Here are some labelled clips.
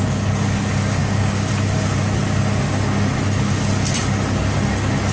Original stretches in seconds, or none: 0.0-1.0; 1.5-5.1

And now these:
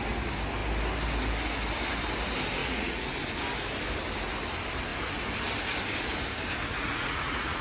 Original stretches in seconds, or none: 0.0-2.6; 3.1-6.7